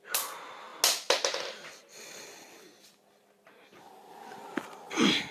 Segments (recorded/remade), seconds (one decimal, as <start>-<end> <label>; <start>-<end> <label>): 0.0-5.3 recorded